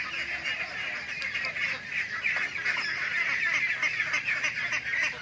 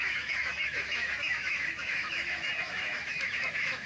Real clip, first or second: first